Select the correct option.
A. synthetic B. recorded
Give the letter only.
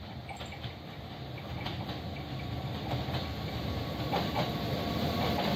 B